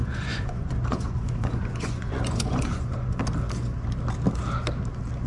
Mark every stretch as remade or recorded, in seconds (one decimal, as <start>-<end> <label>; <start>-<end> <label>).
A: 0.0-3.2 remade; 3.2-5.3 recorded